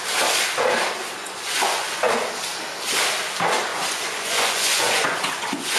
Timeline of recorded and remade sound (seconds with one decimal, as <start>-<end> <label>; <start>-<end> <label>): 0.0-1.2 recorded; 1.2-2.0 remade; 2.0-3.7 recorded; 3.7-5.8 remade